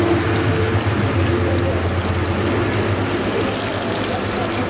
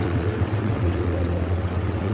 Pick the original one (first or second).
first